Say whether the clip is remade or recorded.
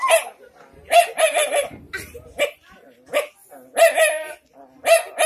recorded